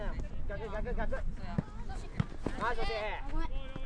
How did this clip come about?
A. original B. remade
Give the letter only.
A